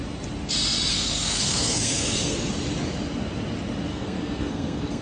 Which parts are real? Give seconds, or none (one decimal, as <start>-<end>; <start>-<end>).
0.0-0.9; 2.5-3.9